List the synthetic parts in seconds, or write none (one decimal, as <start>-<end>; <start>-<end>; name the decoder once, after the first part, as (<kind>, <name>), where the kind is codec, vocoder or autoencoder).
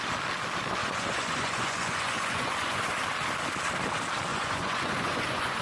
0.8-2.9 (vocoder, Vocos); 4.3-5.6